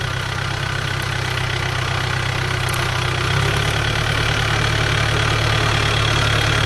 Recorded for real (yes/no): yes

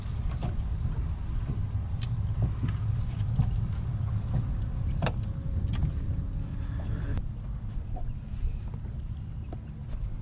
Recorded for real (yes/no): yes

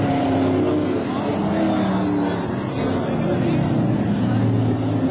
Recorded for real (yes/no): yes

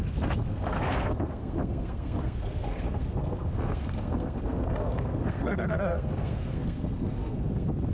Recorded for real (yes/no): no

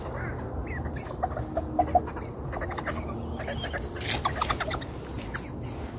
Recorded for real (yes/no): yes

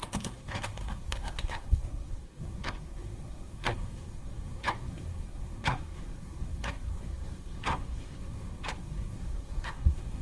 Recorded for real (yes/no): no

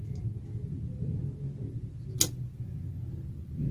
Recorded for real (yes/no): yes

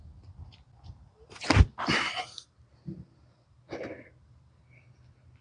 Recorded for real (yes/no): yes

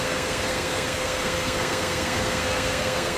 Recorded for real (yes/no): no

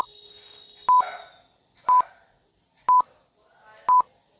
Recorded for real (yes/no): yes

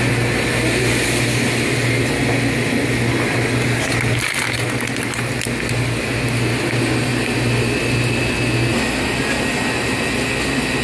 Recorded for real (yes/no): yes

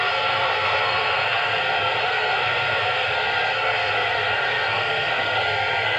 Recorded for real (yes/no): no